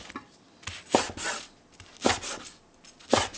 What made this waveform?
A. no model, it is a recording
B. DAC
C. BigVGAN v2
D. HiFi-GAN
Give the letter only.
A